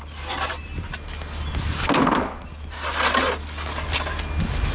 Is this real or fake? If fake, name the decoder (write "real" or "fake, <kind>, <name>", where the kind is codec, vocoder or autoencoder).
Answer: real